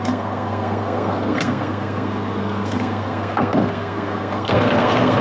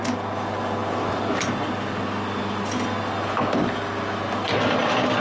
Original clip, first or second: second